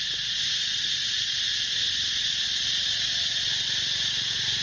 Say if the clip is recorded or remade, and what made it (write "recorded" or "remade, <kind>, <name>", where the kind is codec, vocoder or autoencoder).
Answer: recorded